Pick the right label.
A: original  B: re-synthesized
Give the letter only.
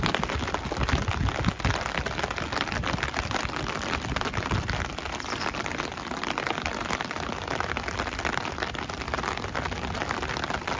A